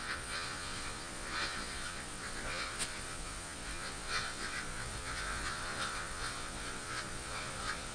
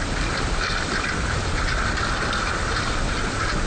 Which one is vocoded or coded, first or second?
first